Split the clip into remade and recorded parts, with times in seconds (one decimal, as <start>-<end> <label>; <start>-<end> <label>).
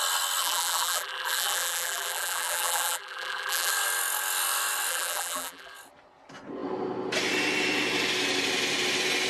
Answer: 0.0-0.4 recorded; 0.4-3.7 remade; 3.7-4.9 recorded; 4.9-5.7 remade; 5.7-9.3 recorded